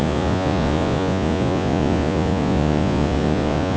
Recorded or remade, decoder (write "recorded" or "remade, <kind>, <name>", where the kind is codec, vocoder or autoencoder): remade, vocoder, Vocos